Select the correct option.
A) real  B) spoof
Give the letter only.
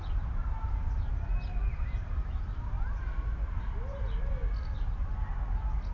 A